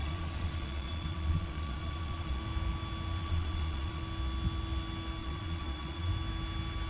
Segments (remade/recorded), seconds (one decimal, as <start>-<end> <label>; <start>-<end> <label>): 0.0-2.4 remade; 2.4-3.2 recorded; 3.2-4.0 remade; 4.0-5.2 recorded; 5.2-6.1 remade; 6.1-6.9 recorded